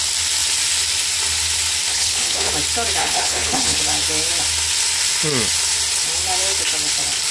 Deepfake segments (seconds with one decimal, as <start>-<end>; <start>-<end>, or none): 1.9-2.5; 3.0-3.8